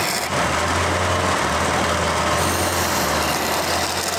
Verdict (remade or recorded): recorded